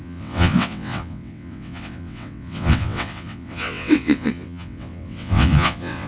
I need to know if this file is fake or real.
fake